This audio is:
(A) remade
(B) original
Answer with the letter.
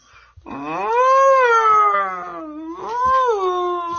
B